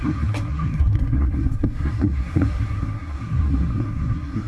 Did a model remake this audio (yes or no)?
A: yes